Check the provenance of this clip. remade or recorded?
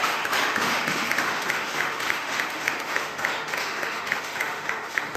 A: remade